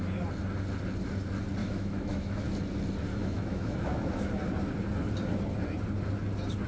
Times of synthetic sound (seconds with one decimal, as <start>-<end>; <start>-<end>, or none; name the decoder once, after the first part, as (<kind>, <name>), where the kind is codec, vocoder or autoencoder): 1.6-2.5 (autoencoder, DAC-VAE); 3.1-4.3